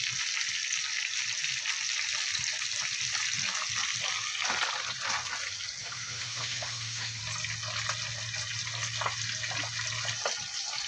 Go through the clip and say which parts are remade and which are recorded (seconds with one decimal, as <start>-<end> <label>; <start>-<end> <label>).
0.0-5.8 recorded; 5.8-7.2 remade; 7.2-10.9 recorded